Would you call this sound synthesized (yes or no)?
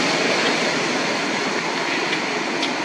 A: no